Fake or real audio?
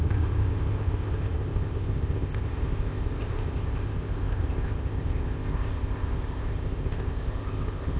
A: fake